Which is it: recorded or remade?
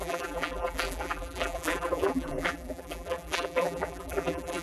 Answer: remade